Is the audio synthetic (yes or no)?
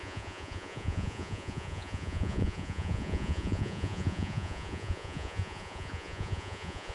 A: yes